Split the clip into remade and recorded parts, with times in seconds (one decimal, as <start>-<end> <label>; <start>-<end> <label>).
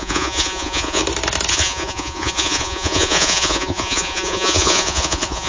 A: 0.0-1.0 remade; 1.0-1.5 recorded; 1.5-5.5 remade